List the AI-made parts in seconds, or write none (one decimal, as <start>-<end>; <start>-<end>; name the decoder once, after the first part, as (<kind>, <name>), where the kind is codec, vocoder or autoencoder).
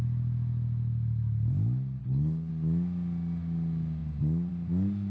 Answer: 2.0-2.5 (codec, HILCodec)